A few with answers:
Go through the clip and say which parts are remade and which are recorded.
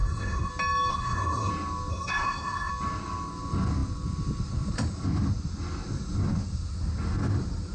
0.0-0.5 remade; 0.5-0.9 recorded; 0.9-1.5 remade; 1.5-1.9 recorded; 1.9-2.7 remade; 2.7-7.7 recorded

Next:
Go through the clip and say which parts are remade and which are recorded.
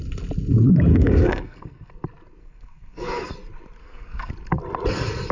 0.0-0.9 recorded; 0.9-1.9 remade; 1.9-2.4 recorded; 2.4-3.3 remade; 3.3-3.8 recorded; 3.8-4.3 remade; 4.3-5.3 recorded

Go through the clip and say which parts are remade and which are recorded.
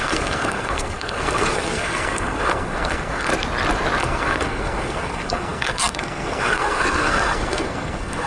0.0-3.3 remade; 3.3-4.0 recorded; 4.0-8.3 remade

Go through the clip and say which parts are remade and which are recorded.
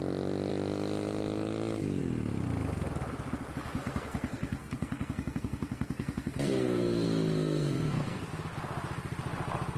0.0-3.8 recorded; 3.8-8.2 remade; 8.2-9.8 recorded